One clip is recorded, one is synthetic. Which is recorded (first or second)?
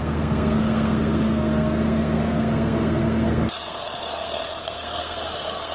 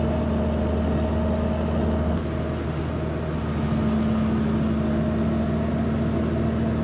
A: second